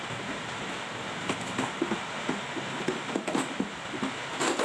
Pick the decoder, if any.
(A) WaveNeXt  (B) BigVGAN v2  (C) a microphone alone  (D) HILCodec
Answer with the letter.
C